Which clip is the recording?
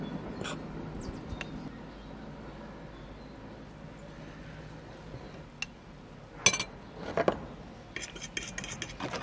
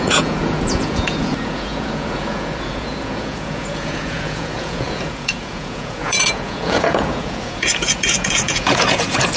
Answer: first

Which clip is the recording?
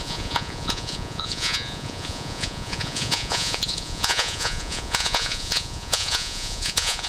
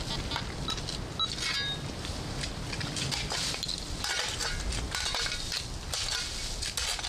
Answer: second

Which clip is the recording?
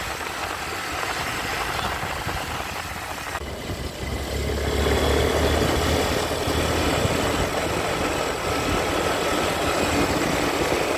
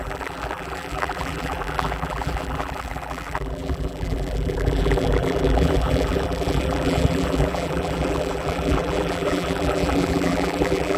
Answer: first